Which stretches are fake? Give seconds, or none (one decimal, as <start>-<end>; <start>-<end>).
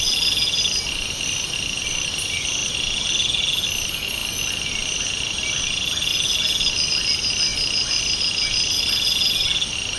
none